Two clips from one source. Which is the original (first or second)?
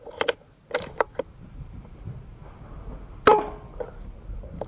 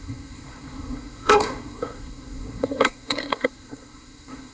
first